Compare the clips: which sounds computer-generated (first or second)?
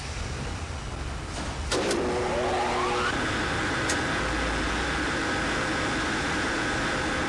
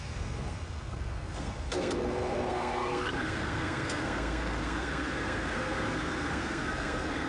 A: second